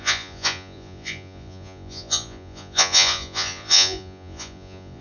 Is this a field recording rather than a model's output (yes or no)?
no